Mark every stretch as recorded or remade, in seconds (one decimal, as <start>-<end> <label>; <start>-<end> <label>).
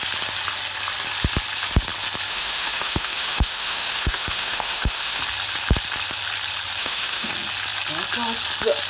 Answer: 0.0-2.3 recorded; 2.3-5.2 remade; 5.2-6.8 recorded; 6.8-7.3 remade; 7.3-8.9 recorded